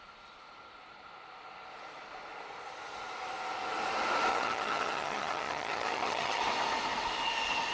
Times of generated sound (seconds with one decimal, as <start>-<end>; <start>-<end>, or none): 4.3-6.4